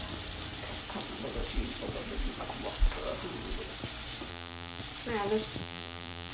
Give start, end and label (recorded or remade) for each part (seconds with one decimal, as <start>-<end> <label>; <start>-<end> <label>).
0.0-4.3 recorded; 4.3-4.8 remade; 4.8-5.6 recorded; 5.6-6.3 remade